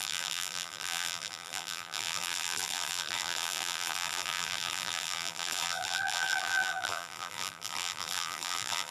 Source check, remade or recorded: remade